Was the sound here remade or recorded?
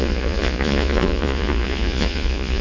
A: remade